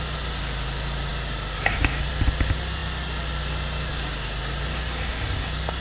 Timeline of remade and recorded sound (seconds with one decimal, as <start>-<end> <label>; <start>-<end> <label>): 0.0-5.8 recorded